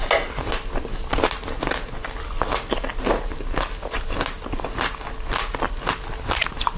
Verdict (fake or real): real